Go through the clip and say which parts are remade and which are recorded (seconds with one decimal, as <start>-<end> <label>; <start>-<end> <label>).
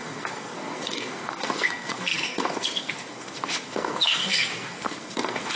0.0-5.5 remade